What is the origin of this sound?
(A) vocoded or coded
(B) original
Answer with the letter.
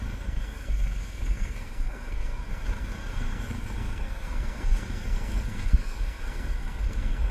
A